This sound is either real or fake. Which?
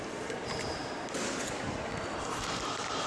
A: fake